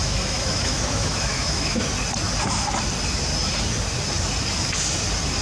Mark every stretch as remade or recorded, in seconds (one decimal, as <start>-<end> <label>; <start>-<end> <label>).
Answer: 0.0-1.8 remade; 1.8-5.4 recorded